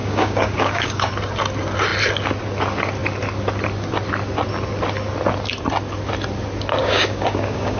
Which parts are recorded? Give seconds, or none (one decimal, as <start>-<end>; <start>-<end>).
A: 1.1-6.8